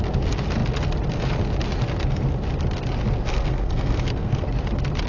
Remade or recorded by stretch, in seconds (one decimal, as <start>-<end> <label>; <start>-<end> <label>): 0.0-3.3 recorded; 3.3-4.4 remade; 4.4-5.1 recorded